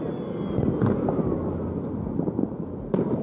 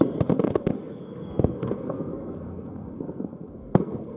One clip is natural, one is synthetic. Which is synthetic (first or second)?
second